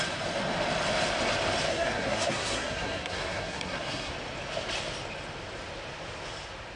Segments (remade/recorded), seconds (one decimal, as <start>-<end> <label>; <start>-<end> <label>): 0.0-1.7 recorded; 1.7-4.1 remade; 4.1-6.8 recorded